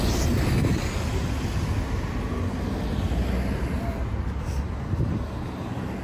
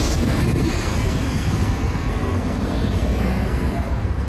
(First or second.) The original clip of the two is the first